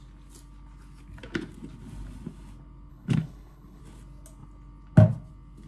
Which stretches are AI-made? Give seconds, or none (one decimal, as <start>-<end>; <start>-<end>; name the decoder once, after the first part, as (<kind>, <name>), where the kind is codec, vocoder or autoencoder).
2.9-3.8 (codec, HILCodec)

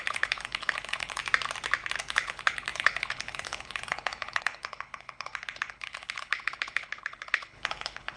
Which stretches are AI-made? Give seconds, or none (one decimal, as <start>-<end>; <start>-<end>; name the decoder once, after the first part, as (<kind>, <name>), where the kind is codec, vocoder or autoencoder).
0.0-1.2 (codec, HILCodec); 2.0-8.2